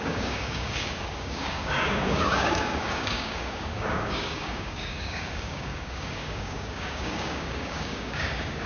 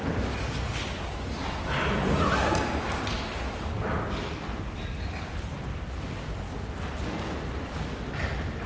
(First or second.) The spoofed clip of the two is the first